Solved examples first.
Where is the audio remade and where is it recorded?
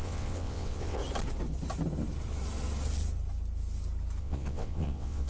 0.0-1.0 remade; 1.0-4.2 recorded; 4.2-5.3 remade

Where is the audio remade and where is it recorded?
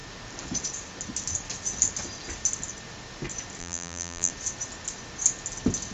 0.0-3.6 recorded; 3.6-4.3 remade; 4.3-5.9 recorded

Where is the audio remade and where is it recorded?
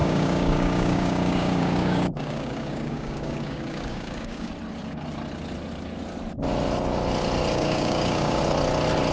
0.0-4.5 remade; 4.5-7.5 recorded; 7.5-8.4 remade; 8.4-9.1 recorded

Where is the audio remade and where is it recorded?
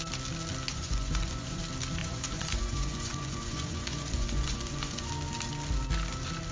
0.0-0.7 recorded; 0.7-1.6 remade; 1.6-2.0 recorded; 2.0-5.1 remade; 5.1-6.5 recorded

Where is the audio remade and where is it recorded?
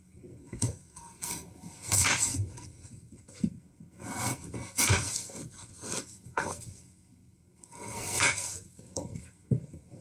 0.0-10.0 remade